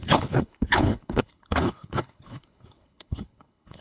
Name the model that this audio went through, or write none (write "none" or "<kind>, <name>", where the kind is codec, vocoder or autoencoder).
codec, HILCodec